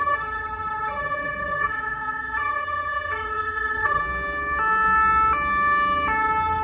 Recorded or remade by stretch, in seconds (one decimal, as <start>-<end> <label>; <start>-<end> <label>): 0.0-4.0 remade; 4.0-6.6 recorded